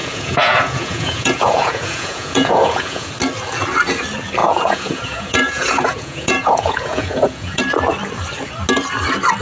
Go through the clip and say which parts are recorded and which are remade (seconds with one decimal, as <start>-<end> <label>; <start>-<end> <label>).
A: 0.0-3.1 remade; 3.1-4.4 recorded; 4.4-7.6 remade; 7.6-9.4 recorded